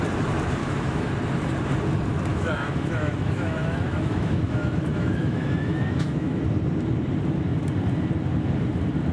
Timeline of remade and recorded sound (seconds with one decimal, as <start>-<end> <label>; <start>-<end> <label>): 0.0-0.6 recorded; 0.6-1.1 remade; 1.1-2.3 recorded; 2.3-6.4 remade; 6.4-9.1 recorded